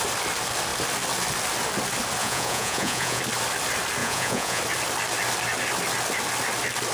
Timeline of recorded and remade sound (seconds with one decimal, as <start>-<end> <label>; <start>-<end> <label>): 0.0-2.2 recorded; 2.2-3.2 remade; 3.2-4.0 recorded; 4.0-4.6 remade; 4.6-6.9 recorded